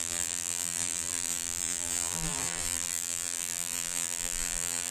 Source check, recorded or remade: remade